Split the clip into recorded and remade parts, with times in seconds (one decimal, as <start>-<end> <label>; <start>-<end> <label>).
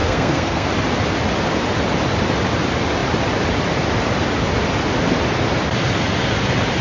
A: 0.0-0.7 remade; 0.7-6.8 recorded